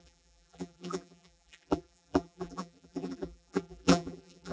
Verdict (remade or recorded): remade